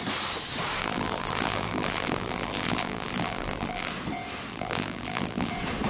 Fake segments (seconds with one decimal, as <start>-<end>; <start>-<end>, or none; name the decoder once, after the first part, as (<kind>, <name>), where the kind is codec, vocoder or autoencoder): 0.8-3.9 (vocoder, BigVGAN v2); 4.5-5.5